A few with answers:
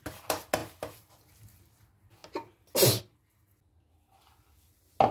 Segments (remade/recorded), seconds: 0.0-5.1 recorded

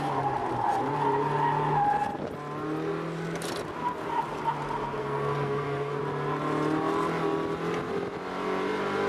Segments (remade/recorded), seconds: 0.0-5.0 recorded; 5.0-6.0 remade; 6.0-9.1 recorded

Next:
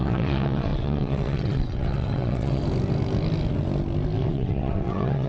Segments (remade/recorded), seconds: 0.0-2.6 remade; 2.6-4.2 recorded; 4.2-5.3 remade

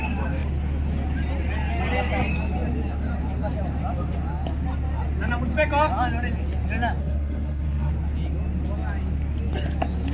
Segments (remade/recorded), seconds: 0.0-7.0 recorded; 7.0-7.9 remade; 7.9-10.1 recorded

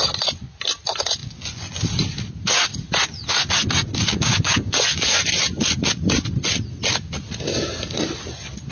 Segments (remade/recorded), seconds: 0.0-1.2 recorded; 1.2-1.8 remade; 1.8-4.3 recorded; 4.3-5.4 remade; 5.4-8.7 recorded

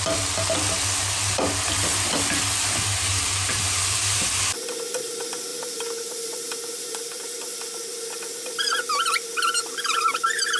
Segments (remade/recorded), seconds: 0.0-3.1 recorded; 3.1-4.2 remade; 4.2-5.5 recorded; 5.5-7.5 remade; 7.5-10.6 recorded

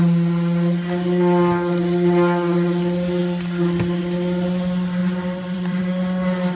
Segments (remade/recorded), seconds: 0.0-5.0 recorded; 5.0-5.8 remade; 5.8-6.5 recorded